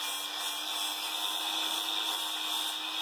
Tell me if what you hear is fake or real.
real